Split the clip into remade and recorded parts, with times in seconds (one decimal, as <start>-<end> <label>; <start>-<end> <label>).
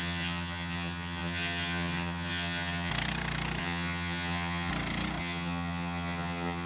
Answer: 0.0-2.9 remade; 2.9-3.6 recorded; 3.6-4.7 remade; 4.7-5.2 recorded; 5.2-6.7 remade